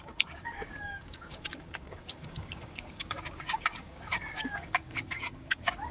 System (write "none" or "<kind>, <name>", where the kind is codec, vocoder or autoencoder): codec, DAC